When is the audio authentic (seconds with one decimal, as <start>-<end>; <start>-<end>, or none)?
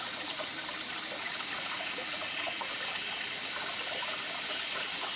0.5-1.2; 2.7-4.8